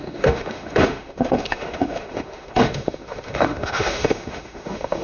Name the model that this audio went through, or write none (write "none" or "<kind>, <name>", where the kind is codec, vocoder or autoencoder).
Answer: autoencoder, DAC-VAE